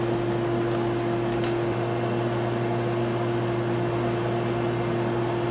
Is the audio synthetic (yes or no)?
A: no